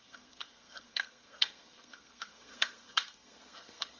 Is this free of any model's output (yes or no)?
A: no